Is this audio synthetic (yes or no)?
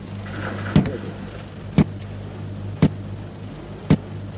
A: no